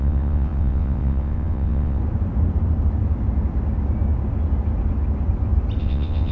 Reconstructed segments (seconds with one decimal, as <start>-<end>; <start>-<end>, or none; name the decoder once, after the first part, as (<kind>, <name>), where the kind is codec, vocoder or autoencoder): 0.0-2.0 (vocoder, WaveNeXt); 5.8-6.3